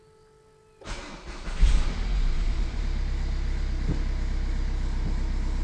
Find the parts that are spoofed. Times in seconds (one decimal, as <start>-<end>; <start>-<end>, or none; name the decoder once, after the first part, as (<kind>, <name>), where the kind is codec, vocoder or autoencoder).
2.1-2.8 (vocoder, Vocos)